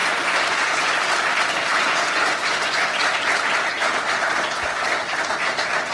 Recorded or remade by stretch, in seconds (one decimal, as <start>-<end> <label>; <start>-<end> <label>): 0.0-0.9 remade; 0.9-1.7 recorded; 1.7-3.1 remade; 3.1-5.9 recorded